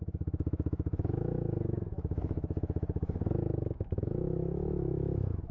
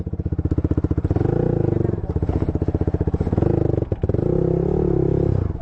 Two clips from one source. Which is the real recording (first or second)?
second